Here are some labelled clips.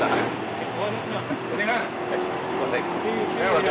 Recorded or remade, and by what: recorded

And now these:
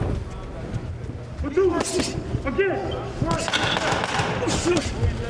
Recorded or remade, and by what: recorded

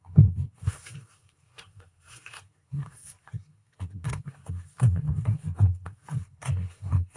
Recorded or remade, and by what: remade, codec, SNAC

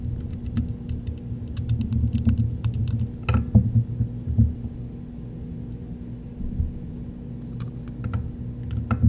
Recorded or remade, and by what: recorded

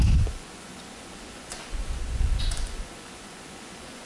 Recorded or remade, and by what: remade, vocoder, Vocos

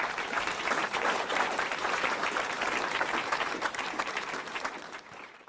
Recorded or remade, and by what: remade, vocoder, BigVGAN v2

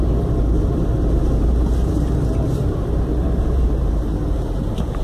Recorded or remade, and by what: remade, vocoder, BigVGAN v2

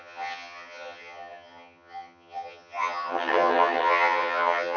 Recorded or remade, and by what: remade, vocoder, HiFi-GAN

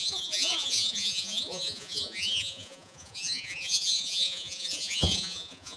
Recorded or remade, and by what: remade, vocoder, Vocos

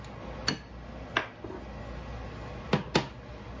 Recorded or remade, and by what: recorded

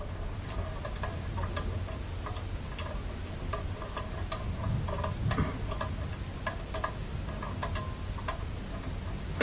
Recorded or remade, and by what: recorded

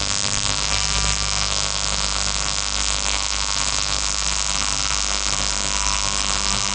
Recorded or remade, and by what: remade, codec, SNAC